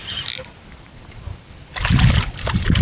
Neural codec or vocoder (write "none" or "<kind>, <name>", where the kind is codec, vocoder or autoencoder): none